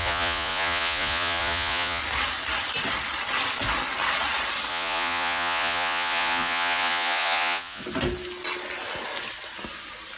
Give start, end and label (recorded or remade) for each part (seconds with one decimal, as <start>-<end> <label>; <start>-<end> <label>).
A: 0.0-2.0 remade; 2.0-4.7 recorded; 4.7-7.8 remade; 7.8-10.2 recorded

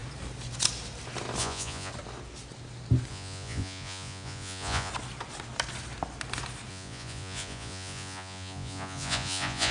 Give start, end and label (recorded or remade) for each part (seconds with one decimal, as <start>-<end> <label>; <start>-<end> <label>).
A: 0.0-1.4 recorded; 1.4-1.9 remade; 1.9-3.1 recorded; 3.1-4.9 remade; 4.9-6.7 recorded; 6.7-9.7 remade

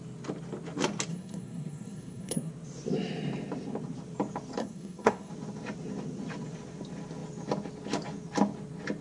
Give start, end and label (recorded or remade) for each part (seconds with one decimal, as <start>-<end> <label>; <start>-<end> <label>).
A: 0.0-1.1 recorded; 1.1-2.5 remade; 2.5-4.6 recorded; 4.6-5.3 remade; 5.3-9.0 recorded